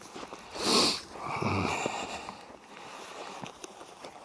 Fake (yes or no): no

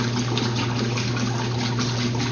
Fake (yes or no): no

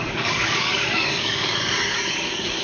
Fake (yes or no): yes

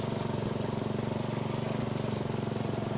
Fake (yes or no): no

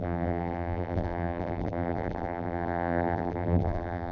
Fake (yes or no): yes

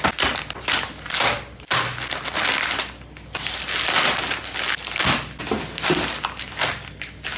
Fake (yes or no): no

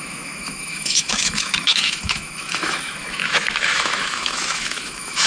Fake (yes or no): yes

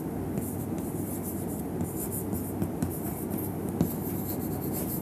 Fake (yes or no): no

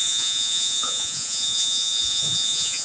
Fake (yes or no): yes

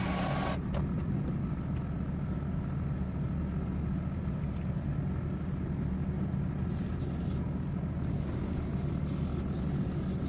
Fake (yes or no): no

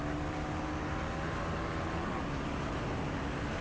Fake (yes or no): yes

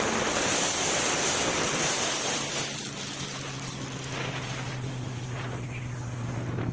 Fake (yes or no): no